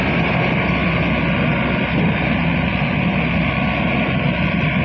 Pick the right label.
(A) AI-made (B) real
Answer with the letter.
B